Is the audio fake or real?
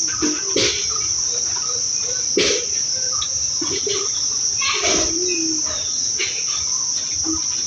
real